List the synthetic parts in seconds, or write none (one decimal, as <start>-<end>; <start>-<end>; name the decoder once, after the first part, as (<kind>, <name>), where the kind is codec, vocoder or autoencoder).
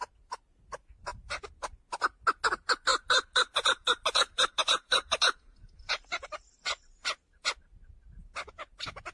1.1-1.8 (vocoder, BigVGAN v2); 2.9-7.6